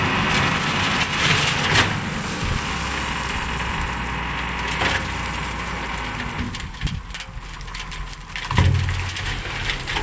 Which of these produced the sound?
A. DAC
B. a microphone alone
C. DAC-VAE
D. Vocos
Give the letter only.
B